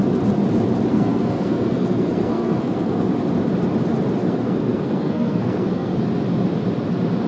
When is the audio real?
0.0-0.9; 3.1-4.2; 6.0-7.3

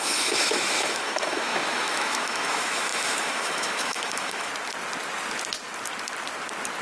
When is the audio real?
4.5-6.8